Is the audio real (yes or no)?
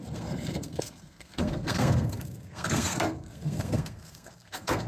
no